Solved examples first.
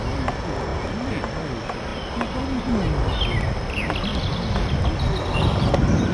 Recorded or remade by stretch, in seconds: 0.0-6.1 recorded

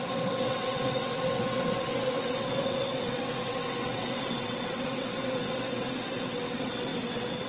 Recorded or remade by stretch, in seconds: 0.0-7.5 remade

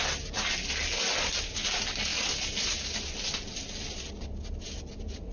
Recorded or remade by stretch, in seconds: 0.0-5.3 recorded

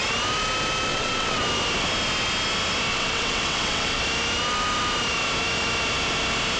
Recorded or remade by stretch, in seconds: 0.0-0.9 recorded; 0.9-1.4 remade; 1.4-2.9 recorded; 2.9-4.0 remade; 4.0-6.6 recorded

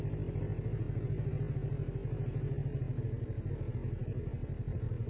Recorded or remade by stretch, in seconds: 0.0-5.1 recorded